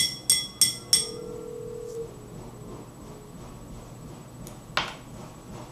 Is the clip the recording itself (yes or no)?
yes